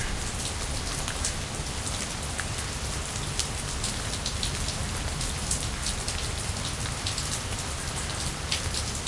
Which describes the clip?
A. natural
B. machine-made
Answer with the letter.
A